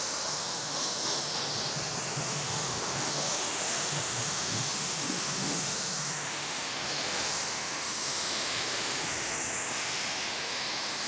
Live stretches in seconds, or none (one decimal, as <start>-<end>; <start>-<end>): 1.4-2.1